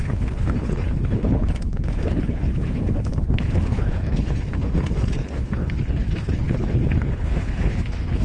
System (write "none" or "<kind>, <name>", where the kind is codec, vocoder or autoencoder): codec, HILCodec